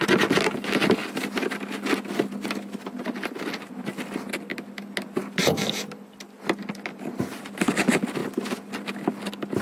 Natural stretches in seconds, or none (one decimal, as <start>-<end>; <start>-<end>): 0.0-9.6